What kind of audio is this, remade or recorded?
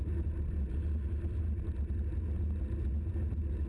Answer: recorded